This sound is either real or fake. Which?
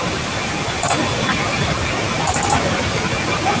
real